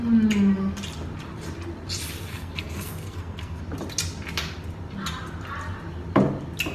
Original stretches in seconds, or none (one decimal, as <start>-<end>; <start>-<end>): 0.0-2.3; 3.6-6.7